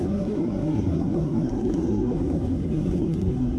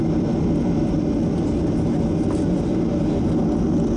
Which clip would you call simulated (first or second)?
first